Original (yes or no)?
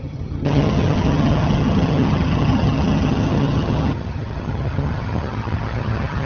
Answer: no